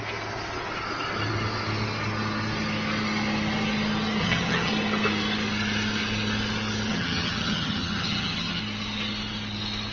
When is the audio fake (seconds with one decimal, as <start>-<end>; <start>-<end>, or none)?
4.2-4.7; 6.9-8.6